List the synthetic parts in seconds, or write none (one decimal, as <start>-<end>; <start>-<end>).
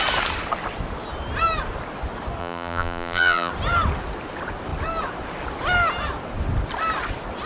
2.4-3.5